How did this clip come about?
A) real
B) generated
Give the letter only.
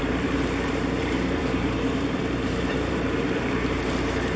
B